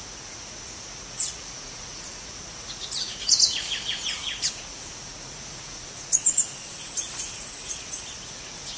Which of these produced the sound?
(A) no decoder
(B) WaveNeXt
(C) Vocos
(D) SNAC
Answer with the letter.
C